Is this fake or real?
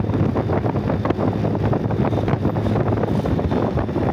real